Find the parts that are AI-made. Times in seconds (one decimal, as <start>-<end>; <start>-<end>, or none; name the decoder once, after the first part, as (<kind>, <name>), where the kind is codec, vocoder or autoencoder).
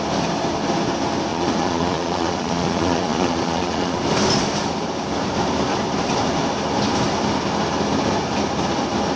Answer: 1.3-4.0 (vocoder, Vocos)